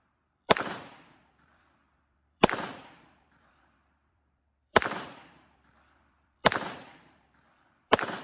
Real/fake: fake